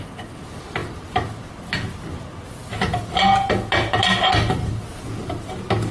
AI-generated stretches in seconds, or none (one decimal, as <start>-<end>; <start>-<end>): none